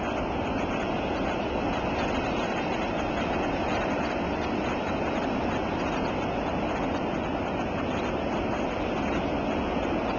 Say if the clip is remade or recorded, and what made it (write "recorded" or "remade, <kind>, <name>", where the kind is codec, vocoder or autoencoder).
recorded